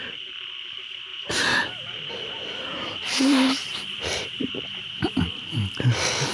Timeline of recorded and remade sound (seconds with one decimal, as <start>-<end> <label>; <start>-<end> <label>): 0.0-1.1 recorded; 1.1-2.1 remade; 2.1-2.7 recorded; 2.7-5.2 remade; 5.2-6.3 recorded